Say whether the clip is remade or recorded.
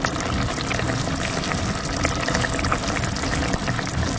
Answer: recorded